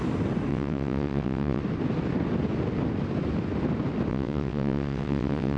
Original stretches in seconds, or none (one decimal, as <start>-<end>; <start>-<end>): 0.0-0.5; 1.6-4.1